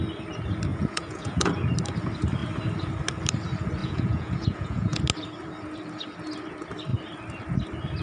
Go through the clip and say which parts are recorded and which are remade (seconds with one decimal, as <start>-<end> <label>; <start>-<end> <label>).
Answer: 0.0-0.7 recorded; 0.7-1.5 remade; 1.5-3.8 recorded; 3.8-5.0 remade; 5.0-8.0 recorded